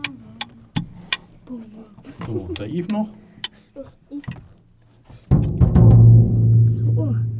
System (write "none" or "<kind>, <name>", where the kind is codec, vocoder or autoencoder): none